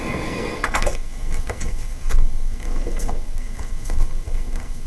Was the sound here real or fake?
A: fake